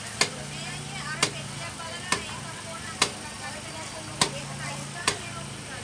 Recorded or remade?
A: recorded